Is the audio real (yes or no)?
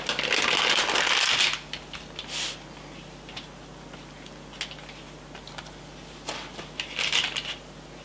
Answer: yes